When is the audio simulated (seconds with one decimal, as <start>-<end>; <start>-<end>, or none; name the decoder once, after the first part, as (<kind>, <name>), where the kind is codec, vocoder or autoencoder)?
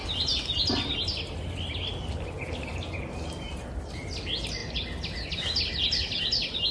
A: none